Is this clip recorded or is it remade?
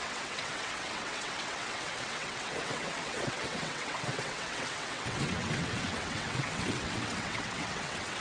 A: remade